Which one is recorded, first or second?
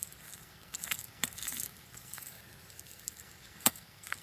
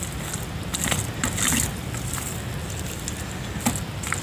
second